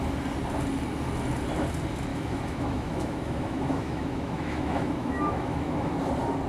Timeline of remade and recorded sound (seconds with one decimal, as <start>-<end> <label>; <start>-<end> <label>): 0.0-2.1 recorded; 2.1-6.0 remade; 6.0-6.5 recorded